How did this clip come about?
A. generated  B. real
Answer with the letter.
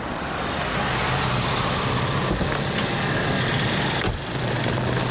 B